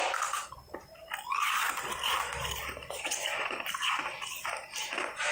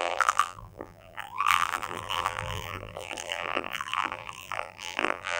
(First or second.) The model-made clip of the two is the second